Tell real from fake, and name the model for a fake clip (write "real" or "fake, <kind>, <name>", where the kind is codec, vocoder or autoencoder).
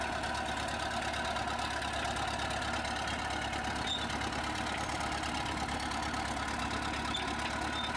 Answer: real